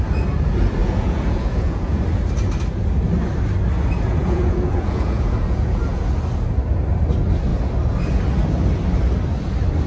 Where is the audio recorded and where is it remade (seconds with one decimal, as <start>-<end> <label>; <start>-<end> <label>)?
0.0-0.8 recorded; 0.8-2.0 remade; 2.0-4.2 recorded; 4.2-6.0 remade; 6.0-9.9 recorded